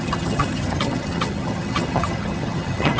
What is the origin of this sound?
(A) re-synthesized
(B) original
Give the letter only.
A